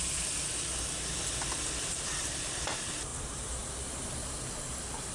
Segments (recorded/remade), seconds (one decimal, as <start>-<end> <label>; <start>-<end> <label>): 0.0-3.1 recorded; 3.1-4.5 remade; 4.5-5.1 recorded